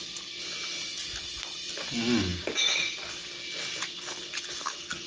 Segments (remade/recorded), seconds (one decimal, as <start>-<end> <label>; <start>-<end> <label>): 0.0-4.6 recorded; 4.6-5.1 remade